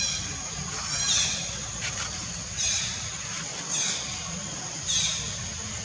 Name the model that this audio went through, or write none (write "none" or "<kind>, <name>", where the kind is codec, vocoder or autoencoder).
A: none